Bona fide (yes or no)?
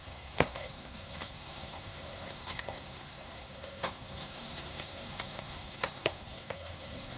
no